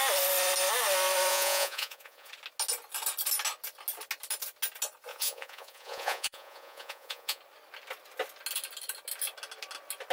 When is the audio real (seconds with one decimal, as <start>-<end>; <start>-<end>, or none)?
0.0-1.3; 2.3-5.1; 7.4-10.1